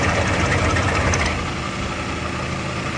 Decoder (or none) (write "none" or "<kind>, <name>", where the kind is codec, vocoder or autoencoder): none